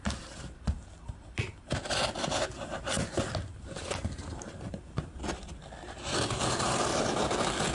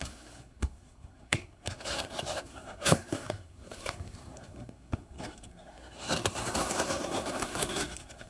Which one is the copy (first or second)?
second